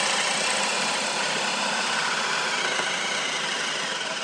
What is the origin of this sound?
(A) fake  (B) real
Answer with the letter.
B